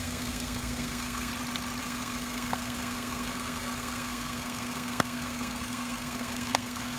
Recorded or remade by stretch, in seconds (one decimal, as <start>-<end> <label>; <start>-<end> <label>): 0.0-1.3 remade; 1.3-1.8 recorded; 1.8-7.0 remade